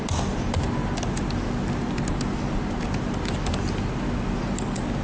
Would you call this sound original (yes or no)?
yes